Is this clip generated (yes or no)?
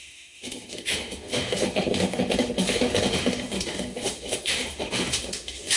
yes